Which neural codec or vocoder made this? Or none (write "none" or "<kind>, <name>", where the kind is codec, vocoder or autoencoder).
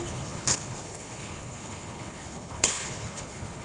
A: codec, HILCodec